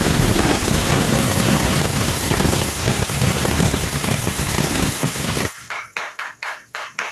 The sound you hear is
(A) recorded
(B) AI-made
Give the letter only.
B